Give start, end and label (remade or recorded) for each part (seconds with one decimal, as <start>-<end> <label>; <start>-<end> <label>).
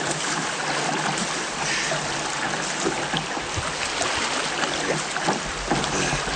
0.0-6.4 recorded